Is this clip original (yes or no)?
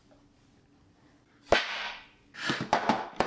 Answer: yes